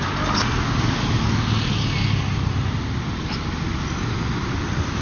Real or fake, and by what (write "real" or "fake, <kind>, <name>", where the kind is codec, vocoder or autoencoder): real